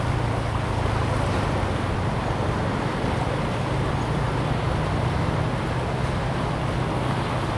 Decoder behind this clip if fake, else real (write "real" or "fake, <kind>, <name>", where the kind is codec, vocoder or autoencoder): real